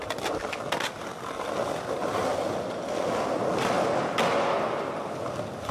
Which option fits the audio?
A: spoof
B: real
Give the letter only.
B